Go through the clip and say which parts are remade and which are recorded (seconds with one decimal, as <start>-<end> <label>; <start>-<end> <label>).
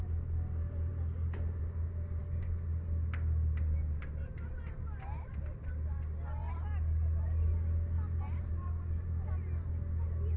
0.0-10.4 recorded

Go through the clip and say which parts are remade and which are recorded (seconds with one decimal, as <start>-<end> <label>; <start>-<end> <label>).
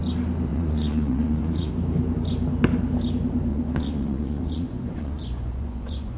0.0-0.5 recorded; 0.5-1.7 remade; 1.7-3.5 recorded; 3.5-6.2 remade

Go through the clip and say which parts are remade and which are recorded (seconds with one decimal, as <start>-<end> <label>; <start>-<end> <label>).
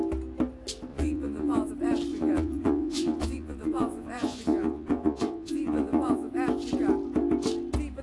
0.0-0.9 recorded; 0.9-1.7 remade; 1.7-2.1 recorded; 2.1-6.3 remade; 6.3-8.0 recorded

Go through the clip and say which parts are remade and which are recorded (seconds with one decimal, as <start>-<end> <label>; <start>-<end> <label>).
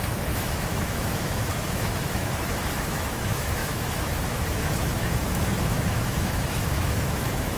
0.0-7.6 remade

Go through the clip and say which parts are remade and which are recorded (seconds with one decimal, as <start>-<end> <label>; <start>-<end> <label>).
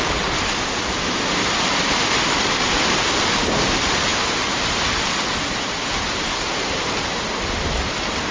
0.0-8.3 recorded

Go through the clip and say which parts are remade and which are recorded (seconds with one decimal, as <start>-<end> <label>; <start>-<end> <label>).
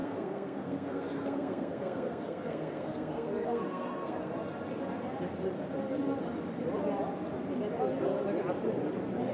0.0-4.3 remade; 4.3-9.3 recorded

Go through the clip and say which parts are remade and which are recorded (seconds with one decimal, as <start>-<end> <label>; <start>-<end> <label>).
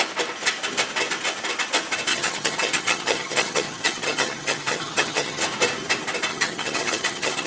0.0-2.1 recorded; 2.1-5.4 remade; 5.4-6.3 recorded; 6.3-7.5 remade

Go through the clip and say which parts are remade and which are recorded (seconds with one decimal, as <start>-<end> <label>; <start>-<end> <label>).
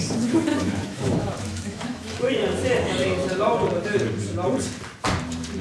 0.0-0.5 recorded; 0.5-2.3 remade; 2.3-5.6 recorded